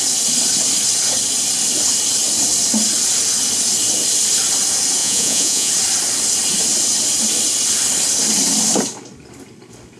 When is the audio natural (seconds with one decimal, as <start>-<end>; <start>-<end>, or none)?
0.0-5.0; 5.7-10.0